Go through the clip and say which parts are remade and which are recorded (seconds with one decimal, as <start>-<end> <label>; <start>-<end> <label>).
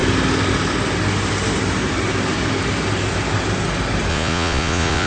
0.0-4.1 recorded; 4.1-5.1 remade